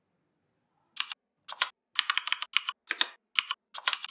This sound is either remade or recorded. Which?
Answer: recorded